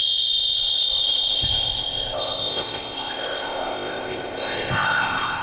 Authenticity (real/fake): fake